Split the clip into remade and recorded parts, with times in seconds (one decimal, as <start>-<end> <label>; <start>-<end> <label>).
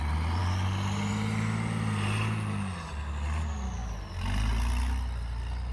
0.0-5.7 recorded